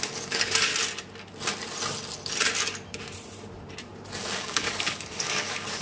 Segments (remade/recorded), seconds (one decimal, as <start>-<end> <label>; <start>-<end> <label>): 0.0-0.7 remade; 0.7-4.2 recorded; 4.2-5.8 remade